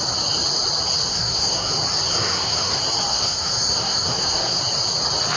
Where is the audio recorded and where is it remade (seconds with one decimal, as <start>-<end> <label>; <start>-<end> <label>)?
0.0-1.1 recorded; 1.1-1.7 remade; 1.7-2.1 recorded; 2.1-2.7 remade; 2.7-3.1 recorded; 3.1-4.6 remade; 4.6-5.4 recorded

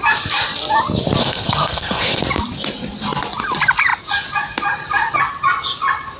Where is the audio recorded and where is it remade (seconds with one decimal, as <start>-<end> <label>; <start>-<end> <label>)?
0.0-1.2 recorded; 1.2-2.2 remade; 2.2-6.2 recorded